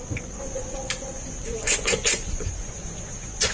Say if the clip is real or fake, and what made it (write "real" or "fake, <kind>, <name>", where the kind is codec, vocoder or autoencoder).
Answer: fake, vocoder, Vocos